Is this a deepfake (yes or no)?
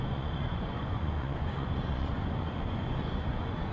yes